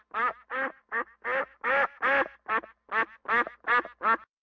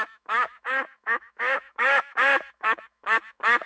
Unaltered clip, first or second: first